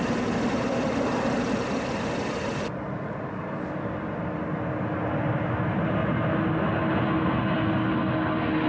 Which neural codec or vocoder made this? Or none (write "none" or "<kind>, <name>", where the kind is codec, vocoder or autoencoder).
none